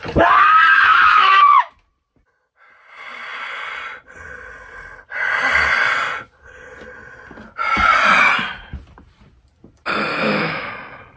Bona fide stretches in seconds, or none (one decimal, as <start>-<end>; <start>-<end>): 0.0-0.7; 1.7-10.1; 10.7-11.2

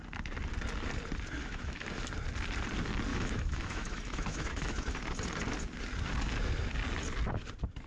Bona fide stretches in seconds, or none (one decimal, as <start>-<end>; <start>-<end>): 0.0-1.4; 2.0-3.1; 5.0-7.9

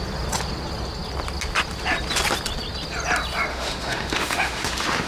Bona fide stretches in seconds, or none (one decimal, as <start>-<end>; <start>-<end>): 0.0-3.5